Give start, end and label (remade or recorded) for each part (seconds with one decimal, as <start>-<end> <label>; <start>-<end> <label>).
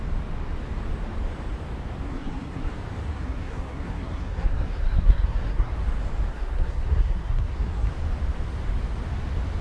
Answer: 0.0-2.1 recorded; 2.1-2.7 remade; 2.7-3.1 recorded; 3.1-5.7 remade; 5.7-6.3 recorded; 6.3-7.9 remade; 7.9-9.6 recorded